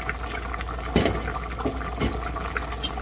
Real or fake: real